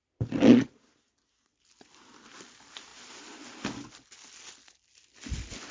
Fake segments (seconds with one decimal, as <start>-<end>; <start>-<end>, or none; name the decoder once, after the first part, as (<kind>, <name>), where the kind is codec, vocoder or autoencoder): none